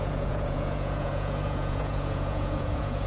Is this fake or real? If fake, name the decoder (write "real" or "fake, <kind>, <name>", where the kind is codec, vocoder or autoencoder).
fake, vocoder, Vocos